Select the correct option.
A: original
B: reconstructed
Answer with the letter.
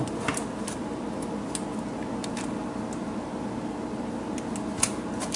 A